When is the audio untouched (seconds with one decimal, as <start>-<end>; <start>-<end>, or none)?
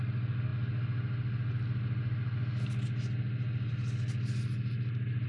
0.0-5.3